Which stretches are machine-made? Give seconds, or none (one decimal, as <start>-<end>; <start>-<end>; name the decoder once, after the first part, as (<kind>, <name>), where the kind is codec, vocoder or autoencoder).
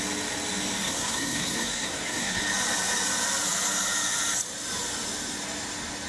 0.8-2.4 (codec, SNAC)